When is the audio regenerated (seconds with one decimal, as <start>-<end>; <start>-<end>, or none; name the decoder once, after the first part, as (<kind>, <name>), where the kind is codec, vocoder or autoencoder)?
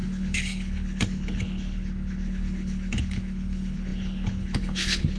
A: 0.0-5.2 (codec, HILCodec)